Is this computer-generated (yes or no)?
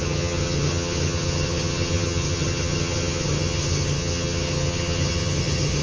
yes